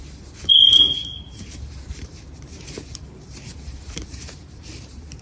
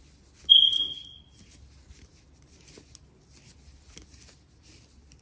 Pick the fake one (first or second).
first